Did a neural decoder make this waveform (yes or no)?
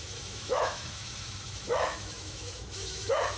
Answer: yes